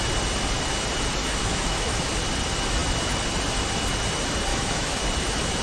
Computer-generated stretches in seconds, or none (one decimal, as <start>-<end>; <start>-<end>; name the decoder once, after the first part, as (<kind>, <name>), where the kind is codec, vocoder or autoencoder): 1.2-2.1 (autoencoder, DAC-VAE); 4.5-5.0